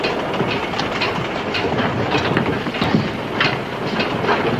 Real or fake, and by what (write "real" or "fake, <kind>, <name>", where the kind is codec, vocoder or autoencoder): real